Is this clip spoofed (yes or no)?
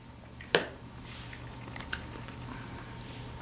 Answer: no